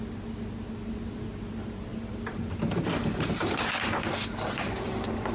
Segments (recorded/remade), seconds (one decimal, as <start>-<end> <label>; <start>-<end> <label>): 0.0-1.9 recorded; 1.9-5.3 remade